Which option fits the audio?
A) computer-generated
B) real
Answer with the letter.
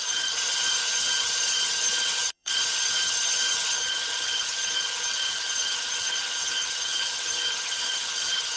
A